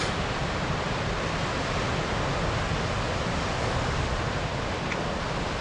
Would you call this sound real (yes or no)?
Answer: yes